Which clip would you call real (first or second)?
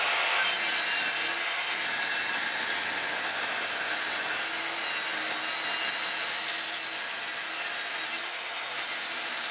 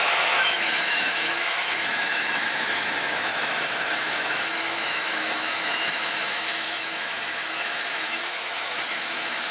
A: first